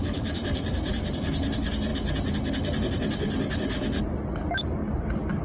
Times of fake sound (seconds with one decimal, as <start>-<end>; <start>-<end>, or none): 0.0-1.9; 4.0-5.4